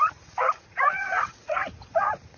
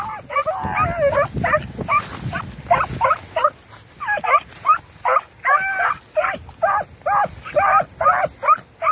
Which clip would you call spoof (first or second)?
first